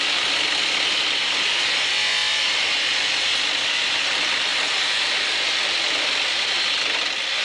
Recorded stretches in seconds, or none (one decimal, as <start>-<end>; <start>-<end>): none